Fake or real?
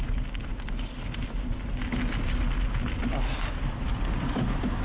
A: real